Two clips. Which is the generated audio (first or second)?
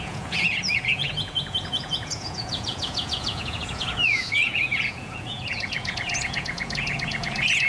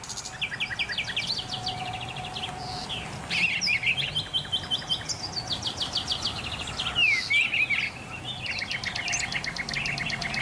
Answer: first